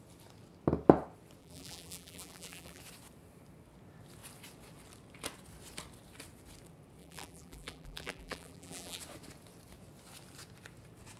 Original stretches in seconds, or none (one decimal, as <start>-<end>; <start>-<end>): 0.0-1.4; 2.8-7.0; 9.0-11.2